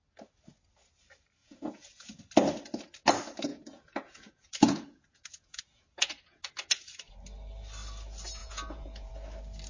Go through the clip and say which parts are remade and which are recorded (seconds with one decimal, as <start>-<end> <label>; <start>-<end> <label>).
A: 0.0-1.4 recorded; 1.4-2.2 remade; 2.2-3.5 recorded; 3.5-7.1 remade; 7.1-8.4 recorded; 8.4-9.1 remade; 9.1-9.7 recorded